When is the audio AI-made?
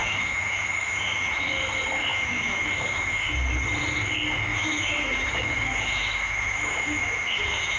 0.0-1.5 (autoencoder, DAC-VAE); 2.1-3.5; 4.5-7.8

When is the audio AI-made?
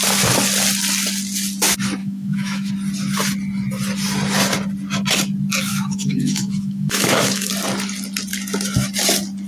2.0-2.7 (autoencoder, DAC-VAE); 5.7-7.5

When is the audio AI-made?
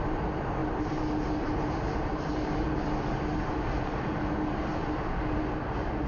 none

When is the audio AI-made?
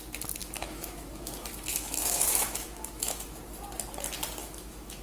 0.4-3.4 (autoencoder, DAC-VAE); 4.4-5.0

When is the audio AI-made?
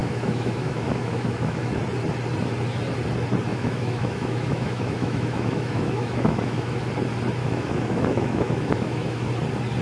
0.0-1.8 (autoencoder, DAC-VAE); 3.5-6.9; 7.4-9.3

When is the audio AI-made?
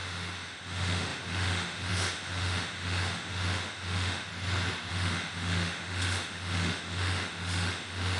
0.0-4.3 (autoencoder, DAC-VAE); 4.9-8.2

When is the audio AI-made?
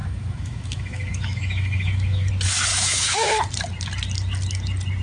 0.0-2.3 (autoencoder, DAC-VAE); 2.7-3.3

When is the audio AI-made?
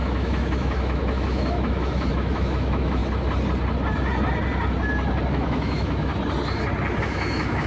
0.0-3.0 (autoencoder, DAC-VAE); 5.3-6.1; 7.0-7.7